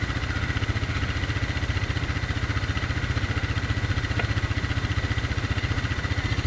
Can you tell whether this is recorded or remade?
recorded